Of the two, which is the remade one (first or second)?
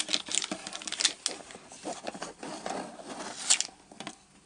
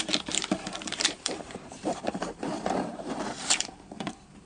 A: second